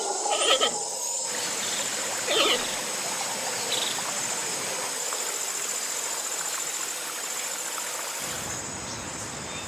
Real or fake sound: real